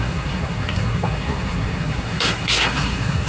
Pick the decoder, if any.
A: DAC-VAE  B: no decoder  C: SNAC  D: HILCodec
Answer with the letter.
C